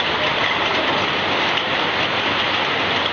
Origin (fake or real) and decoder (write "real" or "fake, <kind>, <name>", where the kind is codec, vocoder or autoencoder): real